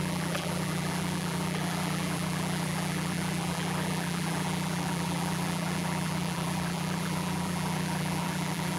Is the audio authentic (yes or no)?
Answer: no